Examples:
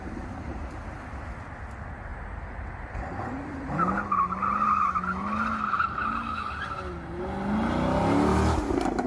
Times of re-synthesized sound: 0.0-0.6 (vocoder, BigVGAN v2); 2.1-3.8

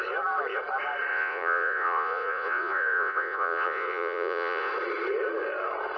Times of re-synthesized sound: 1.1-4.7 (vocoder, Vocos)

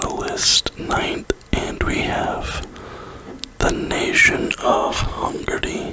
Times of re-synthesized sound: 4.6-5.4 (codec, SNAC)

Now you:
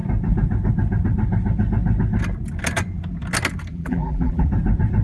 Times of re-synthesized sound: 3.7-4.5 (vocoder, BigVGAN v2)

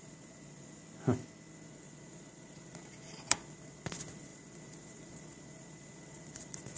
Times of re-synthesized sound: 0.0-0.8 (vocoder, Vocos); 1.7-6.8

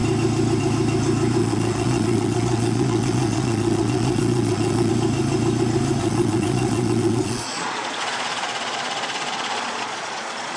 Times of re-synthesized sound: 1.4-4.9 (vocoder, Vocos); 6.0-10.6